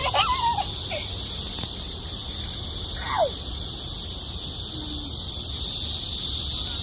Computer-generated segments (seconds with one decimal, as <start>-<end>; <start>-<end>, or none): 0.0-0.6